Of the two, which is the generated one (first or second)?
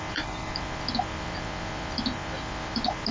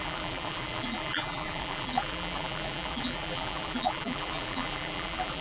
second